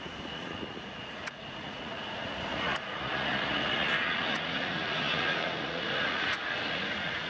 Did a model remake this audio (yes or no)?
yes